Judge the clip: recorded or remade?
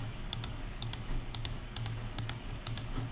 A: remade